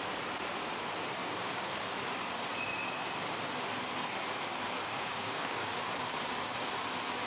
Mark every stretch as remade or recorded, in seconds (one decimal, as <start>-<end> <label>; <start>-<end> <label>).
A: 0.0-1.2 recorded; 1.2-1.9 remade; 1.9-4.8 recorded; 4.8-5.9 remade; 5.9-7.3 recorded